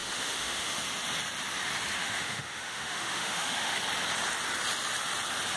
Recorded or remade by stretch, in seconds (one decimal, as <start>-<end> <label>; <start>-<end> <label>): 0.0-0.8 remade; 0.8-2.0 recorded; 2.0-3.8 remade; 3.8-5.6 recorded

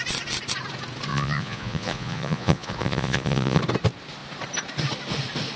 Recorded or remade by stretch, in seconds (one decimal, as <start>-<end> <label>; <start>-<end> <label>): 0.0-1.1 recorded; 1.1-3.6 remade; 3.6-5.6 recorded